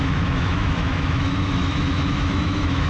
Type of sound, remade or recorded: remade